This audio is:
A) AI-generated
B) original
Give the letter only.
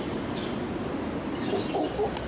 B